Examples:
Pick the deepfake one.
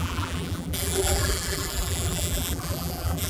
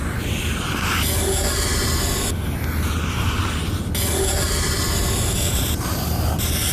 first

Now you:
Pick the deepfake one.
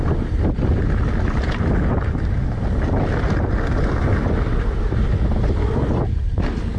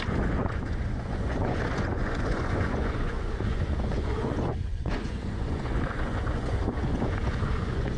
second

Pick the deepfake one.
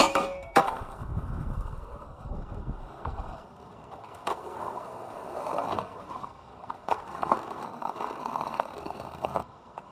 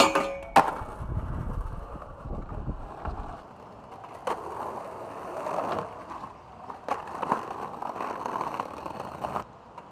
first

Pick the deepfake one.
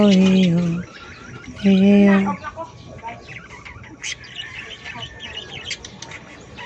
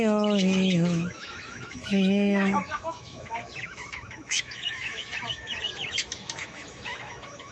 second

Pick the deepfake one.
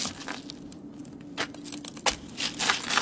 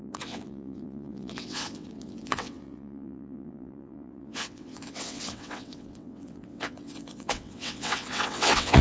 second